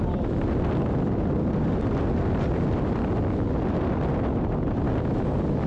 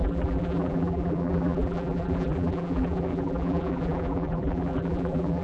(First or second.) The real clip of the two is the first